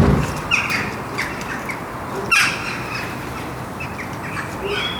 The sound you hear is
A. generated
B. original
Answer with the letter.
B